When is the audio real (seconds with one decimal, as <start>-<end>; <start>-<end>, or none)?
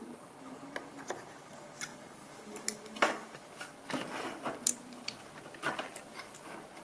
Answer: 1.9-6.0